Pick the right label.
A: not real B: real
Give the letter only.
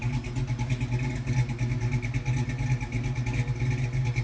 B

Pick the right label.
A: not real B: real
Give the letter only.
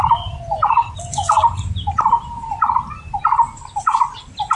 B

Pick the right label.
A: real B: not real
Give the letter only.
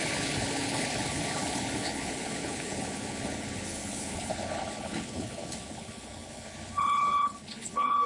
B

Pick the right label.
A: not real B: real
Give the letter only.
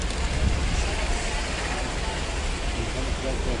B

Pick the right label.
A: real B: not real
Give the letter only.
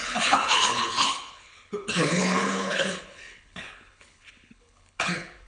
B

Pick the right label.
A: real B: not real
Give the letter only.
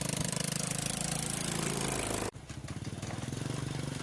A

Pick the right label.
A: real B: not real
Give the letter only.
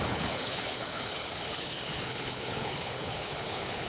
B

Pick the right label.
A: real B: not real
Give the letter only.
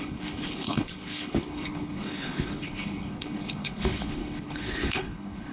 B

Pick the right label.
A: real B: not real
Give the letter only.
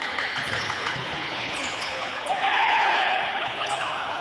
B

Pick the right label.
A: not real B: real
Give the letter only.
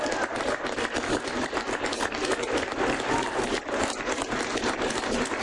B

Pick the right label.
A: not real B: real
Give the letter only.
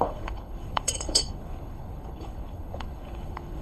A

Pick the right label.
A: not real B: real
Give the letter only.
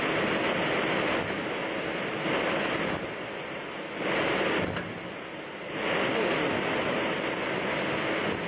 B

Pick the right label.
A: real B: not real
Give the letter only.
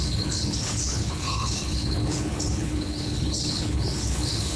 B